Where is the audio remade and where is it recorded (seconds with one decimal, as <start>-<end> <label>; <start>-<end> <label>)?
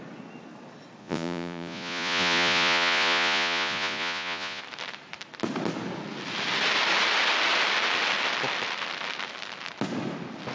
0.0-1.0 recorded; 1.0-4.6 remade; 4.6-10.5 recorded